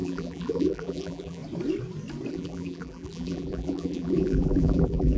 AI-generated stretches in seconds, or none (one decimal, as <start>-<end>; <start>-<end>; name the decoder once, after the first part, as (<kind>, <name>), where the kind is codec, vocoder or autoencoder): 0.0-1.4 (vocoder, BigVGAN v2); 2.3-5.2